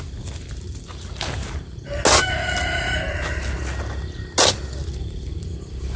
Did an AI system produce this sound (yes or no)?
no